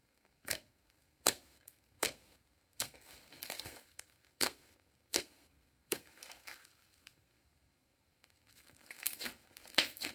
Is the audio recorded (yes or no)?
no